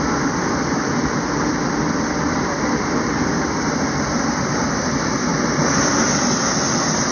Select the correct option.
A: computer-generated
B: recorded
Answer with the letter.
B